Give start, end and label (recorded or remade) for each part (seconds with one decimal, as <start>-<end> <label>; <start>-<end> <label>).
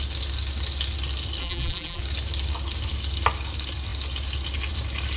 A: 0.0-1.4 recorded; 1.4-2.0 remade; 2.0-5.2 recorded